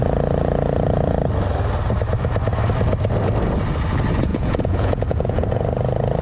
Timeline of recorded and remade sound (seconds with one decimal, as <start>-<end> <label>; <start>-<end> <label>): 0.0-4.3 recorded; 4.3-5.4 remade; 5.4-6.2 recorded